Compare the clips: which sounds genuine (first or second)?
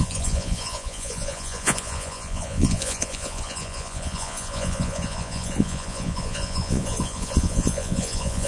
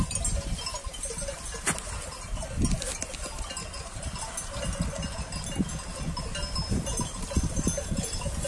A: second